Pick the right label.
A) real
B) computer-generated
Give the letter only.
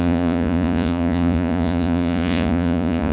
B